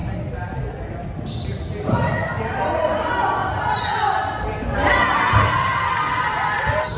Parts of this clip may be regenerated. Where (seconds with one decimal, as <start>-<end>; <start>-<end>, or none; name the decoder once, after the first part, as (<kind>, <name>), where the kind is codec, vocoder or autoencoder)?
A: 3.4-4.0 (vocoder, Vocos)